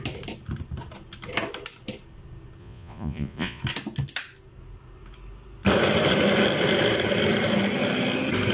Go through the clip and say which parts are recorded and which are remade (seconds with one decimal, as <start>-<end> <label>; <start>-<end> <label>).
0.0-2.6 recorded; 2.6-3.6 remade; 3.6-8.5 recorded